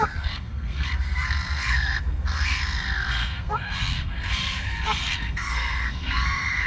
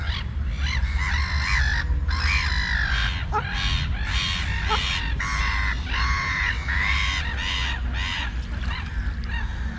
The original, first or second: second